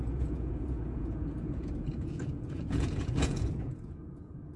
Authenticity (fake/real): fake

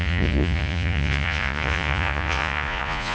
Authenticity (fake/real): fake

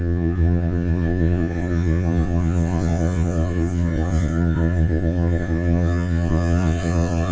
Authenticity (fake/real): fake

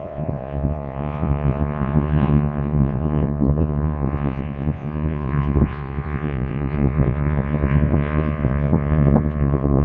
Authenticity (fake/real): fake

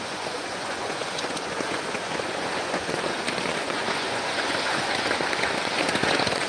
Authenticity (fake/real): fake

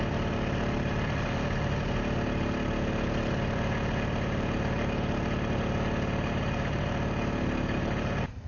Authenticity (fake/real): real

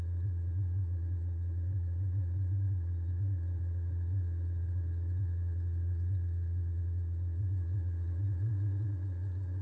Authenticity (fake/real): fake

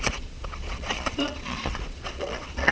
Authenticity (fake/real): fake